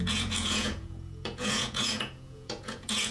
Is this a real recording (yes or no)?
no